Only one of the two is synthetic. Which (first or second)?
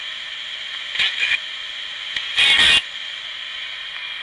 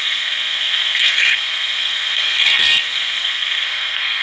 second